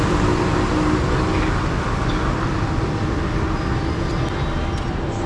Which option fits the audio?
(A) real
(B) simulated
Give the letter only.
A